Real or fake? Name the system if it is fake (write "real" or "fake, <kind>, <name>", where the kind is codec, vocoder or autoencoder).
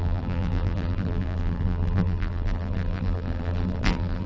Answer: fake, vocoder, BigVGAN v2